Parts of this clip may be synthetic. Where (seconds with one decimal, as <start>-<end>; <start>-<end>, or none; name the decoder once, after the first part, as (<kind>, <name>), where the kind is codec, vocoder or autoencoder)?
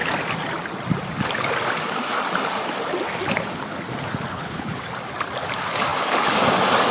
4.3-4.8 (codec, HILCodec)